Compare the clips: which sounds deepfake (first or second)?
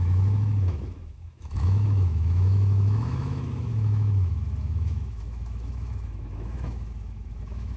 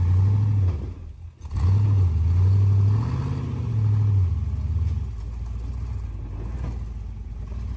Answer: first